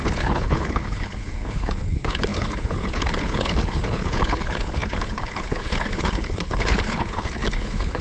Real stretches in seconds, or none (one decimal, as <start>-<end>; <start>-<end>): none